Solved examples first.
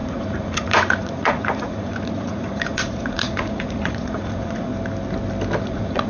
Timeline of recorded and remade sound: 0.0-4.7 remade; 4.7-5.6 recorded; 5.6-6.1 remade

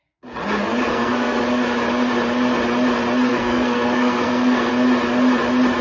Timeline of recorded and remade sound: 0.0-0.9 recorded; 0.9-1.4 remade; 1.4-3.3 recorded; 3.3-4.7 remade; 4.7-5.8 recorded

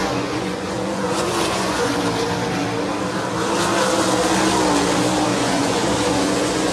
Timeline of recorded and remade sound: 0.0-1.9 remade; 1.9-5.3 recorded; 5.3-6.7 remade

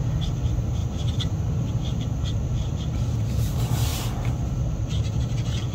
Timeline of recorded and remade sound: 0.0-0.8 recorded; 0.8-2.1 remade; 2.1-5.7 recorded

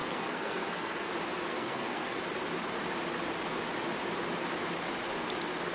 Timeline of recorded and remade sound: 0.0-1.1 remade; 1.1-1.5 recorded; 1.5-2.2 remade; 2.2-5.7 recorded

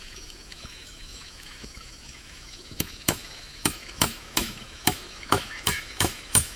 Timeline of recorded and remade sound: 0.0-6.6 remade